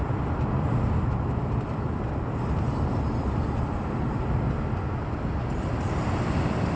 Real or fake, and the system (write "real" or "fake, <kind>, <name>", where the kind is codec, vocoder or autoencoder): real